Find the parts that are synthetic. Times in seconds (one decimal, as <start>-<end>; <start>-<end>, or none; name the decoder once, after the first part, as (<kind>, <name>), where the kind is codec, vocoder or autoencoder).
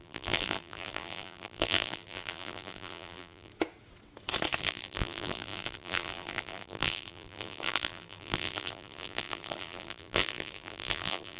0.0-3.5 (vocoder, BigVGAN v2); 4.6-11.4